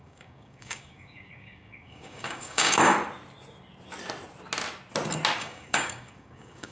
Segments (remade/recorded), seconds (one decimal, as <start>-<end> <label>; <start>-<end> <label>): 0.0-2.9 remade; 2.9-5.4 recorded; 5.4-6.7 remade